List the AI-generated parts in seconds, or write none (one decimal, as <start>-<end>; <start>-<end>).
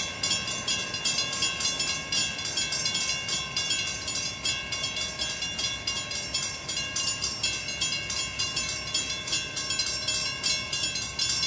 none